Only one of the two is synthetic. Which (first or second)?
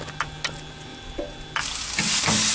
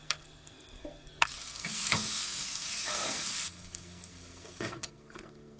second